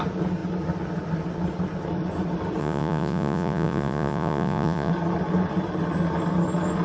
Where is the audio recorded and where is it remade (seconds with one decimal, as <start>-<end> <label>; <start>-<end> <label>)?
0.0-2.6 recorded; 2.6-4.9 remade; 4.9-6.8 recorded